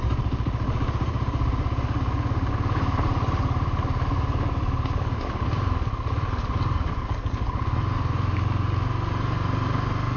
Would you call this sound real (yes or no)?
yes